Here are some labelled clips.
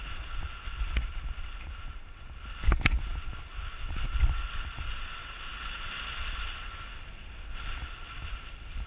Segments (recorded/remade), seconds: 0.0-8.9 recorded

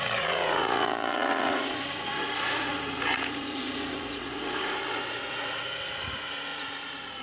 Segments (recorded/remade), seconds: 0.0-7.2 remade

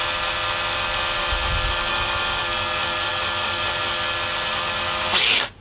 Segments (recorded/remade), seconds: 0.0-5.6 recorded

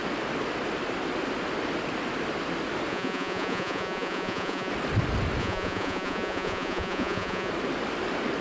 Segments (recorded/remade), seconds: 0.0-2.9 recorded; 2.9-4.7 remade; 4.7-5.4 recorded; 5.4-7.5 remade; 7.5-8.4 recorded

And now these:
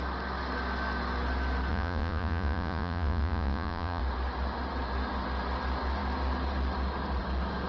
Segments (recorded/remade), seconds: 0.0-1.7 recorded; 1.7-4.0 remade; 4.0-7.7 recorded